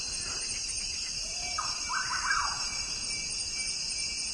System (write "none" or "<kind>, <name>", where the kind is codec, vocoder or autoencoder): none